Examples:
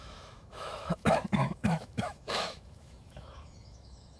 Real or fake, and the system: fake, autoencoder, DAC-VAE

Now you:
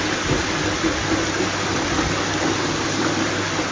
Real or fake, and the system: real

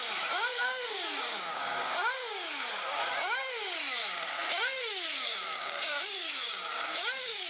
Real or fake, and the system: fake, codec, DAC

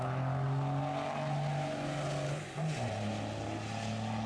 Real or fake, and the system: real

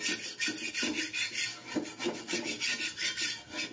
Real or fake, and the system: real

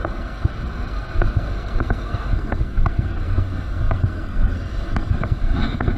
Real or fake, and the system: fake, codec, SNAC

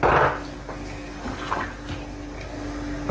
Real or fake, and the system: real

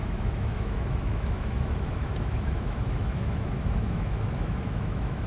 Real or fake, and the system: fake, autoencoder, DAC-VAE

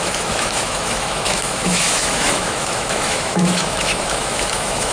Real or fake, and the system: fake, autoencoder, DAC-VAE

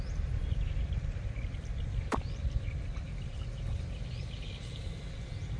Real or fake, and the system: fake, vocoder, BigVGAN v2